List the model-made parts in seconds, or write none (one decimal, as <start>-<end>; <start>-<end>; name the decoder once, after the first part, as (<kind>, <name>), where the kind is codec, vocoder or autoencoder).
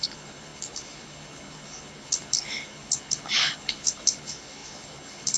0.0-5.4 (codec, HILCodec)